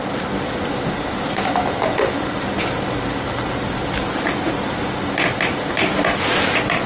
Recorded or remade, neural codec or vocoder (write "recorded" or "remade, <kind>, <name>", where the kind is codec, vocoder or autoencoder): recorded